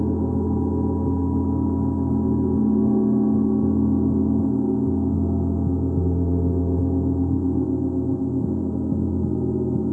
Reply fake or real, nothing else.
real